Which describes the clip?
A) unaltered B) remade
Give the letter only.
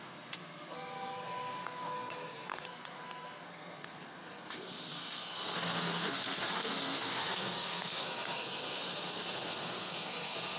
B